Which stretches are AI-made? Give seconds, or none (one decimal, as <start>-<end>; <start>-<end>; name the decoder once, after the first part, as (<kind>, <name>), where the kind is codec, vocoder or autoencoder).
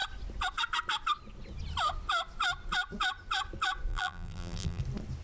3.9-4.8 (vocoder, BigVGAN v2)